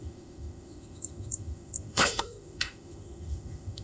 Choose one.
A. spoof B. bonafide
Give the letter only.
A